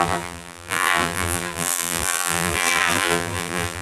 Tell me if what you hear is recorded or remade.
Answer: remade